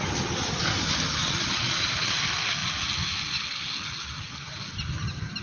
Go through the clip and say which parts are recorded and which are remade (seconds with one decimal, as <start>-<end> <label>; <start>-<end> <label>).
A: 0.0-1.2 recorded; 1.2-2.2 remade; 2.2-5.4 recorded